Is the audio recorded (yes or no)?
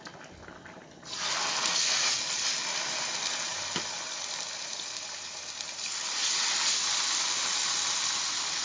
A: yes